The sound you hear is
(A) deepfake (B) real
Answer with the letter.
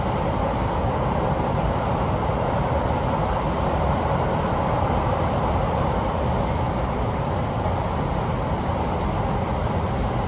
B